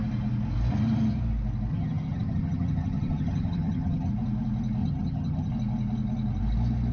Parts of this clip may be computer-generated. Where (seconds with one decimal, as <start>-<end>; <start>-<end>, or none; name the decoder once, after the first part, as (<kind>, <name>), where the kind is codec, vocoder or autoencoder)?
1.7-4.1 (vocoder, HiFi-GAN); 4.8-5.5